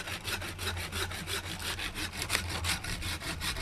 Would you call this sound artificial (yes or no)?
no